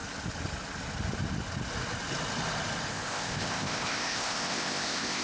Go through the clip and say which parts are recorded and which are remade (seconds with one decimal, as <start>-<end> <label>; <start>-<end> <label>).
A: 0.0-2.9 recorded; 2.9-5.2 remade